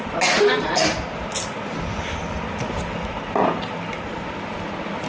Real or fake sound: real